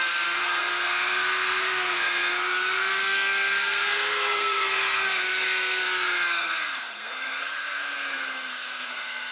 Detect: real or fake fake